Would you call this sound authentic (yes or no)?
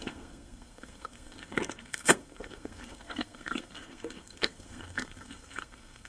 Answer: no